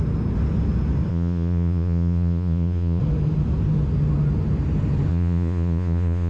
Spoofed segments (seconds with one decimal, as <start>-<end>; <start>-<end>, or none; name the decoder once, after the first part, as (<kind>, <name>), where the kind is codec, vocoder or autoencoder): 1.1-3.0 (vocoder, Vocos); 5.1-6.3